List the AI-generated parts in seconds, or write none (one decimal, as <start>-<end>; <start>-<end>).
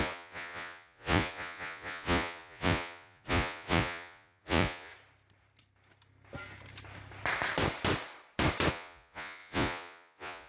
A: 0.0-4.9; 8.7-10.5